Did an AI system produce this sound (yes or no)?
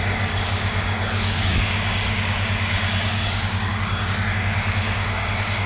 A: yes